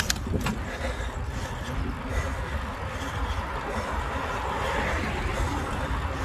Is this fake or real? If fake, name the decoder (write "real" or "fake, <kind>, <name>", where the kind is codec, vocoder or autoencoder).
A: real